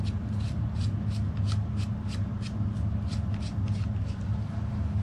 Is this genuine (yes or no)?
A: yes